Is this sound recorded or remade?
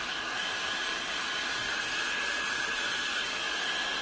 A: recorded